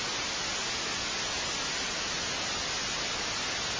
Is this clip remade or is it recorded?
recorded